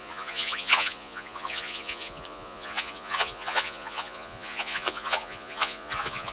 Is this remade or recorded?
remade